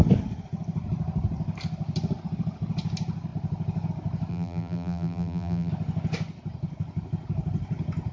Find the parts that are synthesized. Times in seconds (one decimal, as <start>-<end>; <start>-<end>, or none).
4.3-5.7